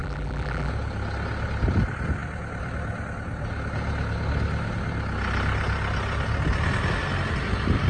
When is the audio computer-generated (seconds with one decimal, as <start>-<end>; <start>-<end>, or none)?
0.0-0.7